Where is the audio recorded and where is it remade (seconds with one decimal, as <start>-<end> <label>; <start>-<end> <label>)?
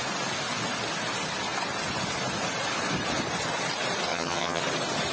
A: 0.0-4.1 recorded; 4.1-4.6 remade; 4.6-5.1 recorded